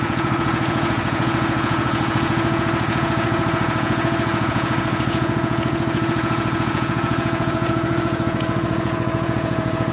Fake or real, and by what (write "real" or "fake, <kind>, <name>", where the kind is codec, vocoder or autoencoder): fake, vocoder, Vocos